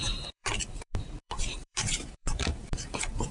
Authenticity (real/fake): fake